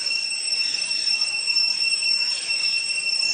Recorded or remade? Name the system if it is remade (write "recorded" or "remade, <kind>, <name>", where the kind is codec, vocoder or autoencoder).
remade, codec, DAC